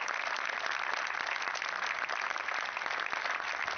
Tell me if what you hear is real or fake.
real